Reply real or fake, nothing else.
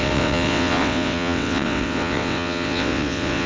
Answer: fake